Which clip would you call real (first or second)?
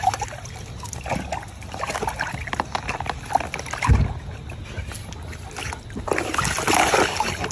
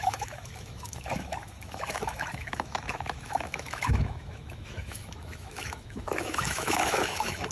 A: first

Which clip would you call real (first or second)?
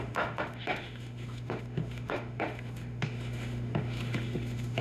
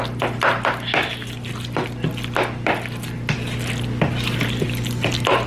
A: second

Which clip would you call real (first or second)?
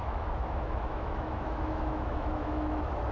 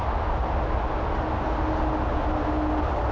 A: second